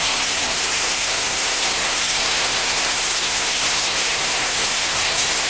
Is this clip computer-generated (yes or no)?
yes